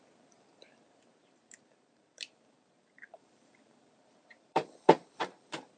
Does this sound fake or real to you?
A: fake